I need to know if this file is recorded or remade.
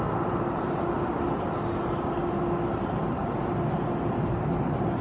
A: recorded